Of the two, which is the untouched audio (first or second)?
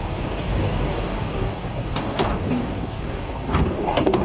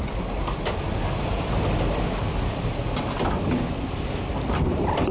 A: second